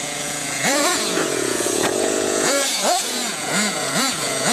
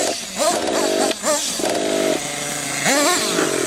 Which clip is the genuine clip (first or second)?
second